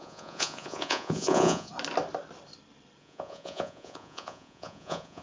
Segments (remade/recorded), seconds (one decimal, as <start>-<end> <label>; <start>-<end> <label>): 0.0-1.7 remade; 1.7-3.0 recorded; 3.0-5.2 remade